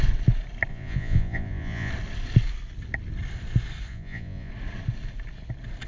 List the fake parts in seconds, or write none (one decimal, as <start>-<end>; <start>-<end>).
0.7-1.9; 3.9-4.5